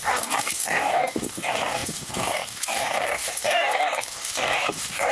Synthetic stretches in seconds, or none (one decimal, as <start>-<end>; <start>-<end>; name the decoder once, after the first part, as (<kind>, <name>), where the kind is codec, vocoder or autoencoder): 0.0-5.1 (codec, DAC)